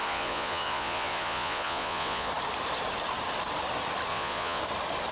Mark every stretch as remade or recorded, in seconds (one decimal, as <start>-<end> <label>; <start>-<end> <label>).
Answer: 0.0-2.3 remade; 2.3-4.1 recorded; 4.1-4.6 remade; 4.6-5.1 recorded

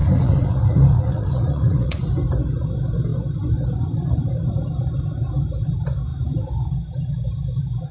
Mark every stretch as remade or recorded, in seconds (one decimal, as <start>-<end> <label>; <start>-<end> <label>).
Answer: 0.0-2.0 remade; 2.0-7.9 recorded

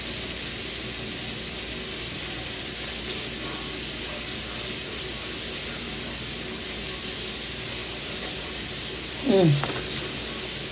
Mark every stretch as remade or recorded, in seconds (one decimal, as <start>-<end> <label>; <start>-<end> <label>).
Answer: 0.0-10.7 recorded

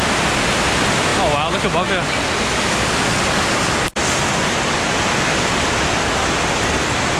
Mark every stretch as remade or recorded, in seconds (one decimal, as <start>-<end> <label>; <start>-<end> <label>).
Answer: 0.0-7.2 recorded

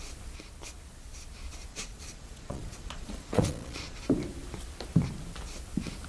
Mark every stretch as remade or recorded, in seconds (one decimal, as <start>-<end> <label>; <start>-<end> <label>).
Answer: 0.0-1.7 recorded; 1.7-4.0 remade; 4.0-6.1 recorded

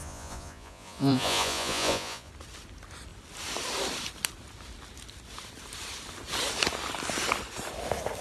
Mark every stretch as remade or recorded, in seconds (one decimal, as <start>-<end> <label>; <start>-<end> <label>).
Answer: 0.0-2.3 remade; 2.3-8.2 recorded

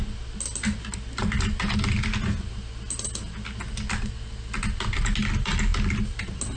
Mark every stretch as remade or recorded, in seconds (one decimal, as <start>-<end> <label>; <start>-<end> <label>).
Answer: 0.0-6.6 recorded

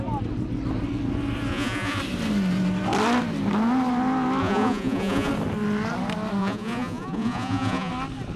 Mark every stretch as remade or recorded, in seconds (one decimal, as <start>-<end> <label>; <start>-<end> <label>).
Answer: 0.0-1.5 recorded; 1.5-2.0 remade; 2.0-4.4 recorded; 4.4-5.3 remade; 5.3-6.4 recorded; 6.4-7.9 remade; 7.9-8.4 recorded